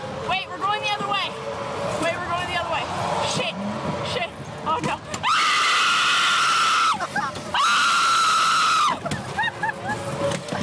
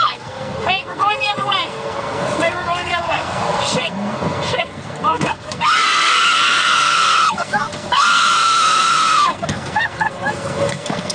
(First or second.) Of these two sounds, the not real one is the second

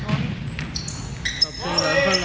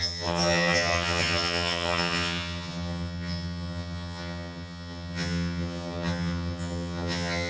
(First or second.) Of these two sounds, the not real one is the second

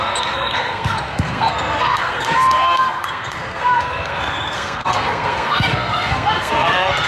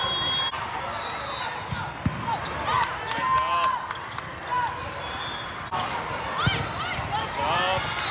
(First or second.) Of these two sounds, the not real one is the first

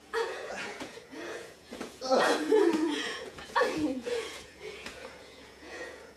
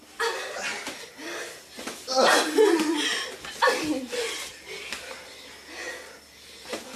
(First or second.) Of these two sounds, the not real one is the first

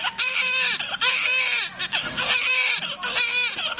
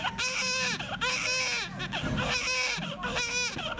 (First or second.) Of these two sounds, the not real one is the first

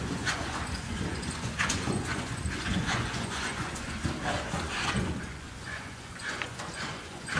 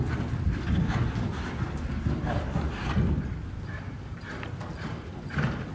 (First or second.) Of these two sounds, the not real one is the first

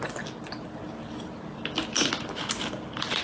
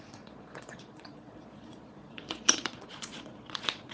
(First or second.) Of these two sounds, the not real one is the second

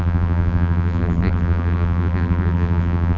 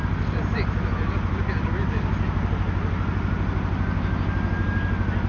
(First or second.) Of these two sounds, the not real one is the first